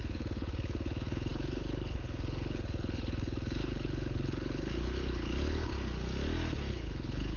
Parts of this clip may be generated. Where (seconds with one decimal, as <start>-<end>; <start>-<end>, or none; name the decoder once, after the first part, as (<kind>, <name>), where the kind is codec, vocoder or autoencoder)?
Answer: 0.0-5.7 (codec, HILCodec); 6.7-7.4